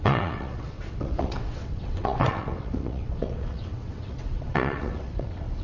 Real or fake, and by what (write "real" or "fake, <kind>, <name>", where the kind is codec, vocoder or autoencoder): fake, vocoder, WaveNeXt